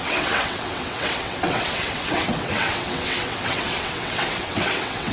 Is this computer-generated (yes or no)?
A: yes